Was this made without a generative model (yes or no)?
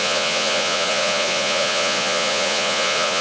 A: no